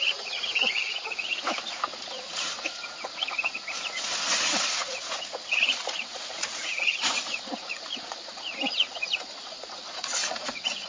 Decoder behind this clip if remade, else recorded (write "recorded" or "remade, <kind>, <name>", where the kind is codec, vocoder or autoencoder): remade, vocoder, Vocos